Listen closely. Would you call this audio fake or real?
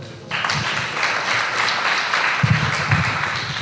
real